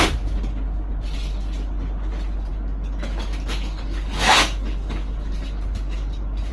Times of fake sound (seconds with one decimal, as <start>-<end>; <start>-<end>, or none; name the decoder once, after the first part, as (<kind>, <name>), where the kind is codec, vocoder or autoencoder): 2.5-6.5 (codec, DAC)